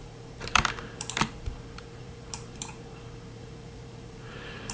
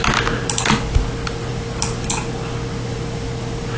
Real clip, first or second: second